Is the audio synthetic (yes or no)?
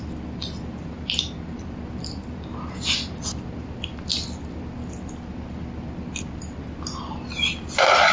no